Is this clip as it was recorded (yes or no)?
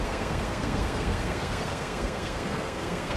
no